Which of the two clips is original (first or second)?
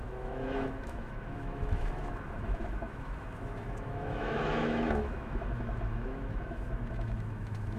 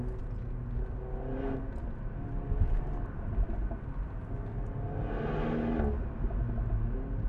second